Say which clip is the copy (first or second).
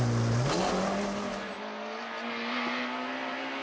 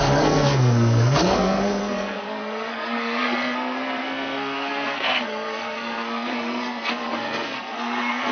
second